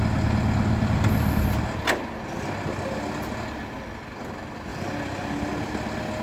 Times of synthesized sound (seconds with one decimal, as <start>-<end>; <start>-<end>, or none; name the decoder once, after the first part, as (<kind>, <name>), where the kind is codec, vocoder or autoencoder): 0.8-1.6 (vocoder, BigVGAN v2); 4.7-5.5